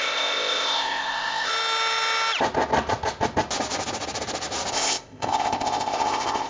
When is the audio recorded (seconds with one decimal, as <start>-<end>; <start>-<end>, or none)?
1.5-4.7

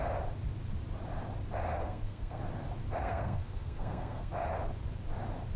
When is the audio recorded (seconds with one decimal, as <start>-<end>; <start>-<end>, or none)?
0.0-1.8; 2.4-3.0; 4.3-5.6

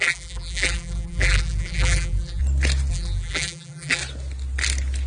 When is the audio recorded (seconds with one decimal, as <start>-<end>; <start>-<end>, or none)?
2.4-2.9; 4.0-5.1

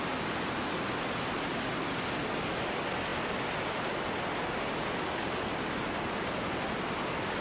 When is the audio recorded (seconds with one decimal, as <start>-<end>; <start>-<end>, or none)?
0.0-7.4

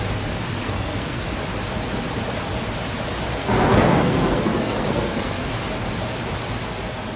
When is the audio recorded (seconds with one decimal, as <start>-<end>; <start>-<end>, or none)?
0.0-0.6; 1.2-3.4; 5.5-7.2